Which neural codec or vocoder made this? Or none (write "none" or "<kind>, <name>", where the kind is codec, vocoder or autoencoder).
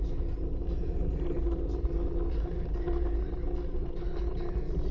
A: none